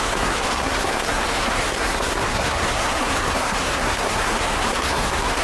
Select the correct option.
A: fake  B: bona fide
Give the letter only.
A